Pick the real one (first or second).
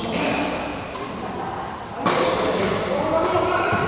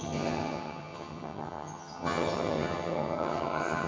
first